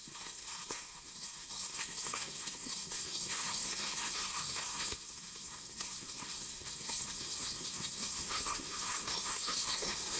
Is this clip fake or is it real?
fake